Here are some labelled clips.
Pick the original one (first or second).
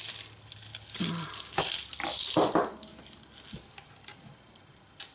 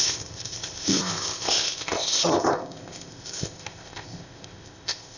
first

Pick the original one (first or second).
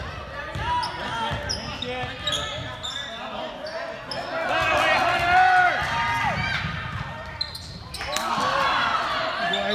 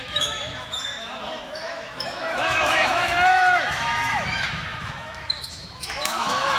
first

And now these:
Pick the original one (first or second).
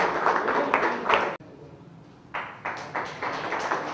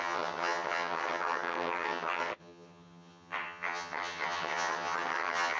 first